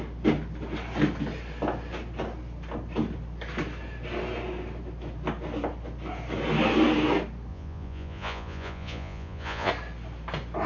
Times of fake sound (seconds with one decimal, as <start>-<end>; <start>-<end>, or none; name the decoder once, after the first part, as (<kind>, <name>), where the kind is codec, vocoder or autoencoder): 7.5-9.7 (vocoder, Vocos)